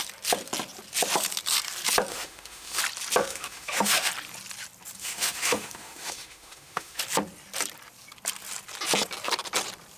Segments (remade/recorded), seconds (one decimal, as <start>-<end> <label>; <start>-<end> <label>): 0.0-2.1 recorded; 2.1-2.8 remade; 2.8-3.2 recorded; 3.2-4.1 remade; 4.1-5.0 recorded; 5.0-7.0 remade; 7.0-10.0 recorded